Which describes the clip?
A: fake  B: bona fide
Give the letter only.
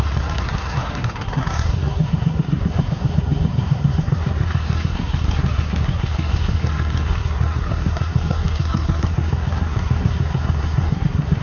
A